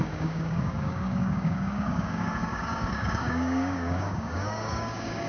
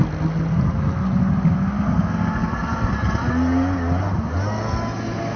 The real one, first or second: second